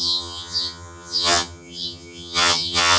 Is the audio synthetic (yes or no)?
yes